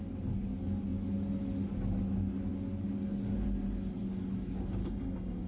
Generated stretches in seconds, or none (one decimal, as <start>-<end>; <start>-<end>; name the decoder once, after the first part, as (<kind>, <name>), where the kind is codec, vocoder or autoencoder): 4.8-5.5 (codec, DAC)